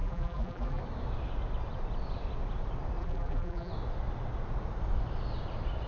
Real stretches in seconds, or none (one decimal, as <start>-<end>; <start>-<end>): 0.8-3.0; 3.7-5.9